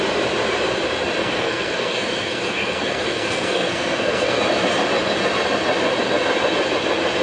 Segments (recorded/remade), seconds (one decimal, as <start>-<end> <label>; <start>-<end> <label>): 0.0-1.2 recorded; 1.2-4.4 remade; 4.4-7.2 recorded